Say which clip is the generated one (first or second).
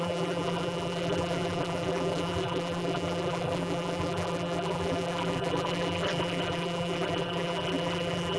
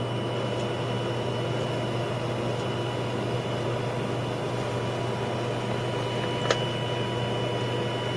first